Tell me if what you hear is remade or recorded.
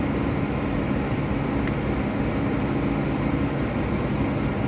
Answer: recorded